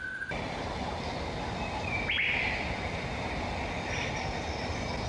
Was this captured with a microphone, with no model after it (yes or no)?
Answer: yes